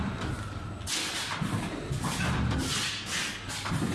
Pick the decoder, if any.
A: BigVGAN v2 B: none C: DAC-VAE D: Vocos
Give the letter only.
B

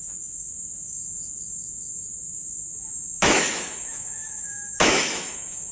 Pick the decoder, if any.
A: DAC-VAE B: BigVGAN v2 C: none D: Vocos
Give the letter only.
A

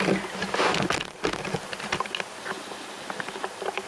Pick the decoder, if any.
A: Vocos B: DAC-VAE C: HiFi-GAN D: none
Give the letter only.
D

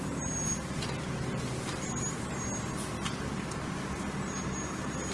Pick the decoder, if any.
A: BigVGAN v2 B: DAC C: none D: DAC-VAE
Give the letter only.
C